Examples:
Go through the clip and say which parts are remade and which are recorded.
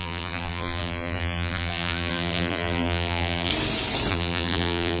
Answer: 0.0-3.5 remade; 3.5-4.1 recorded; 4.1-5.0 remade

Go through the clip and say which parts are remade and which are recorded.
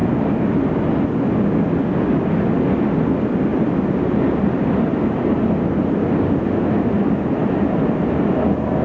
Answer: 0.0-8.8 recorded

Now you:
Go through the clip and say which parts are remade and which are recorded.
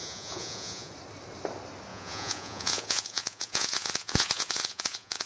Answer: 0.0-0.9 remade; 0.9-1.9 recorded; 1.9-5.3 remade